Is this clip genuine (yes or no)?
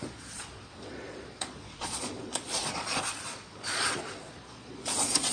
no